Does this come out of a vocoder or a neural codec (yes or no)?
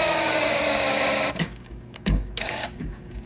yes